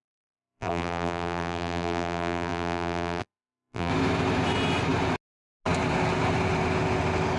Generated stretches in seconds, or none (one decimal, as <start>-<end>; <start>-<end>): 0.0-3.9